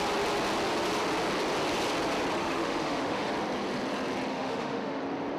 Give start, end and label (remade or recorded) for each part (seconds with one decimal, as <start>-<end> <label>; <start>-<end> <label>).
0.0-2.4 recorded; 2.4-3.3 remade; 3.3-4.3 recorded; 4.3-5.0 remade; 5.0-5.4 recorded